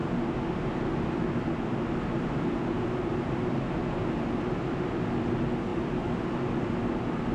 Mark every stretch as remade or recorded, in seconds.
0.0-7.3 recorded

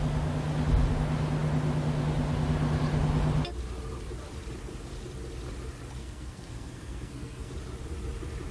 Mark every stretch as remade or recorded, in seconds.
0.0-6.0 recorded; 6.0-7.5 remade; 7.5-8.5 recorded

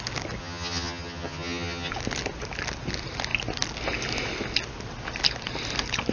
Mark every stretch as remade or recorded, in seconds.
0.0-0.4 recorded; 0.4-1.9 remade; 1.9-6.1 recorded

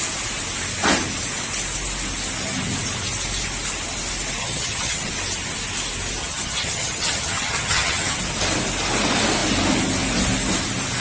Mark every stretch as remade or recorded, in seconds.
0.0-4.4 recorded; 4.4-5.1 remade; 5.1-6.2 recorded; 6.2-8.2 remade; 8.2-11.0 recorded

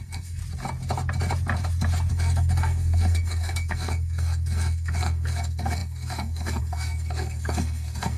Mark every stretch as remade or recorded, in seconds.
0.0-0.4 remade; 0.4-2.1 recorded; 2.1-8.2 remade

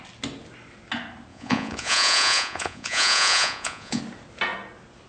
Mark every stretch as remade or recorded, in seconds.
0.0-1.3 recorded; 1.3-4.0 remade; 4.0-5.1 recorded